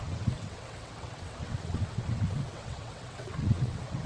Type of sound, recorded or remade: remade